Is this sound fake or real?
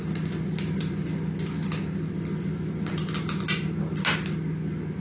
real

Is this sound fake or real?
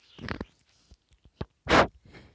real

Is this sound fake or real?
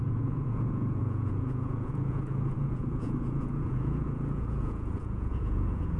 fake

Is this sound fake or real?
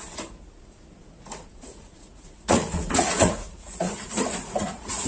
fake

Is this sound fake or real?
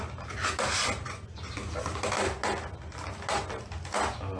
real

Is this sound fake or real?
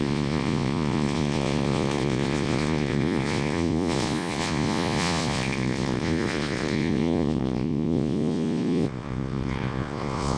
fake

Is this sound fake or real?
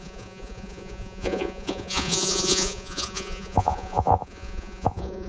fake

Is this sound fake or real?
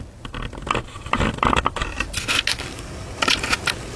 real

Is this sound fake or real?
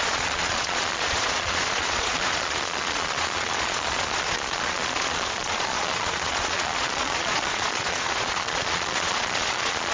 fake